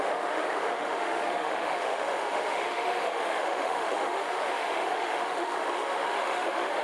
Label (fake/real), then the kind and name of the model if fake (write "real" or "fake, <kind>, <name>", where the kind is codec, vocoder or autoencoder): fake, autoencoder, DAC-VAE